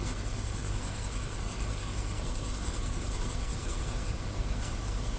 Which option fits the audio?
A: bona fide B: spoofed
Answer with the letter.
B